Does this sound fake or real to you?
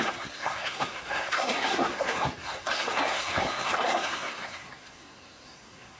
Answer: fake